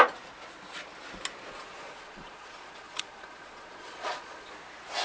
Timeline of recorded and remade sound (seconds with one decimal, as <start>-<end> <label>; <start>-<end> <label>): 0.0-1.5 recorded; 1.5-4.5 remade; 4.5-5.0 recorded